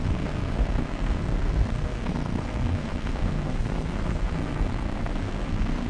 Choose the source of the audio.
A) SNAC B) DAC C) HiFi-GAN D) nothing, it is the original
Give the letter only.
A